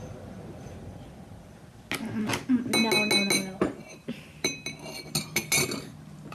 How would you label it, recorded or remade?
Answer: recorded